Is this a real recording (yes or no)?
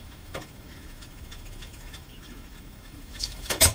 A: no